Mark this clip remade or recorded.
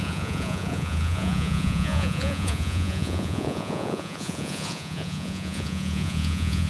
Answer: remade